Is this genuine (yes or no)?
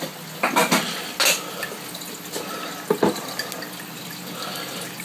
yes